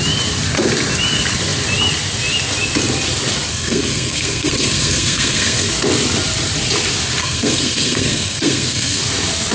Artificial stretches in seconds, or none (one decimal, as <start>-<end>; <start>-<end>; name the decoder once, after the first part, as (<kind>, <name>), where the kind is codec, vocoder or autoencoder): 3.5-5.7 (codec, SNAC); 7.2-9.0